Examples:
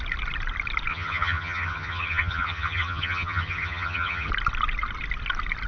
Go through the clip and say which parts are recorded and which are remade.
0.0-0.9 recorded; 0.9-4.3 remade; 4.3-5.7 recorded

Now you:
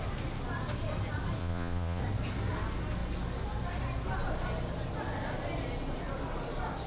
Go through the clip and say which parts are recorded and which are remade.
0.0-1.4 recorded; 1.4-2.0 remade; 2.0-6.9 recorded

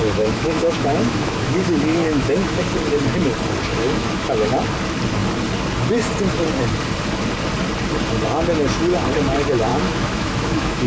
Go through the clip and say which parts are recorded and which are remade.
0.0-2.6 remade; 2.6-3.7 recorded; 3.7-4.5 remade; 4.5-9.7 recorded; 9.7-10.9 remade